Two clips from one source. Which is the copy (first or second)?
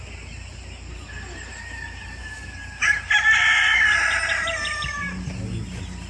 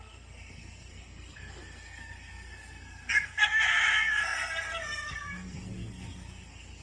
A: second